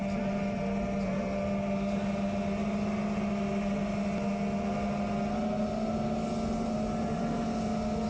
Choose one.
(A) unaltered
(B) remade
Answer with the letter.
A